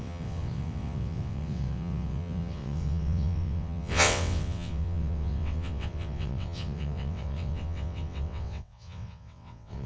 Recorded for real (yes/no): no